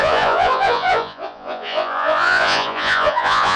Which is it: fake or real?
fake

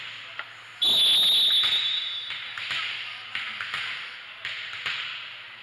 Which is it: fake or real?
real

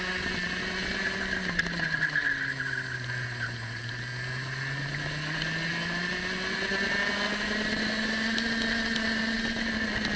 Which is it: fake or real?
real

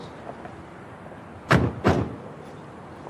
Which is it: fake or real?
real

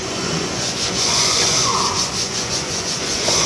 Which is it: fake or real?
fake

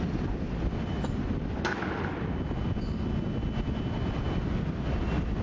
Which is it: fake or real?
real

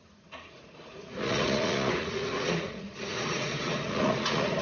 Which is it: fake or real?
fake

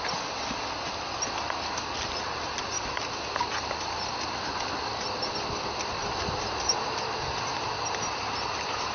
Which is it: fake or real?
real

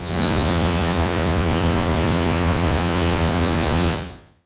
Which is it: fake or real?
fake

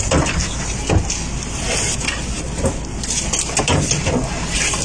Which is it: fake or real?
real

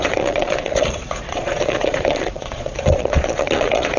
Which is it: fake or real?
fake